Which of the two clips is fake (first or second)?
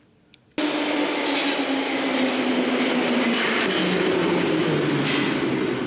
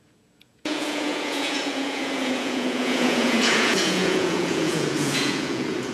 second